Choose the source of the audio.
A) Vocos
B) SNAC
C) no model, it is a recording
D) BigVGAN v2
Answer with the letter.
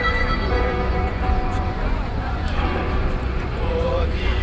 A